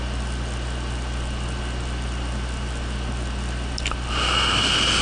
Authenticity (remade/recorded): recorded